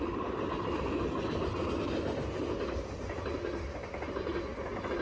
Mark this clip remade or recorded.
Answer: recorded